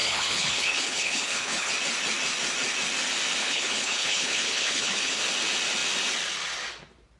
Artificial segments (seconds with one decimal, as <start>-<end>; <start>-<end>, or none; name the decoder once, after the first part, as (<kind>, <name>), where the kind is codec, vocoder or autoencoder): 0.0-1.7 (codec, HILCodec); 3.4-5.2